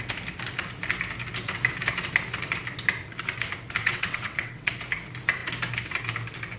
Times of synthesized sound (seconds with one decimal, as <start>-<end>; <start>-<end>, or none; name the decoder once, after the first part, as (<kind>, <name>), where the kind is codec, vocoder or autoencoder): 3.8-4.7 (vocoder, WaveNeXt)